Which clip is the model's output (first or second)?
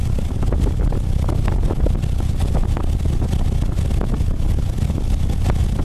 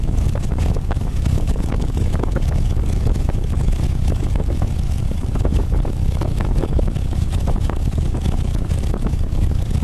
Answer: second